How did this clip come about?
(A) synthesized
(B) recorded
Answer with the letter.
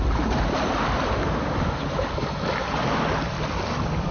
A